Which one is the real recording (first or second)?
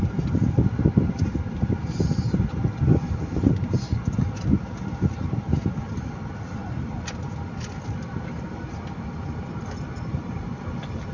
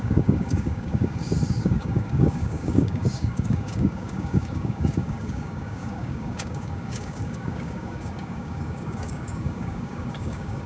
first